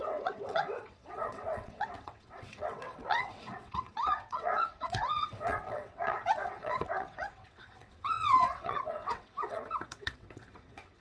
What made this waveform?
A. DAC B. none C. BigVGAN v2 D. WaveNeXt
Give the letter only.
D